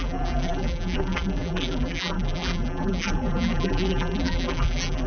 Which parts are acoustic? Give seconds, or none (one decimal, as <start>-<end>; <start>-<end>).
none